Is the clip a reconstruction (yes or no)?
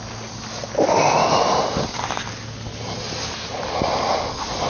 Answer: no